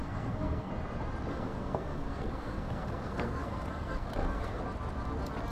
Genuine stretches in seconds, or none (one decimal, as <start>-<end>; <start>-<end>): 0.7-1.3; 4.6-5.5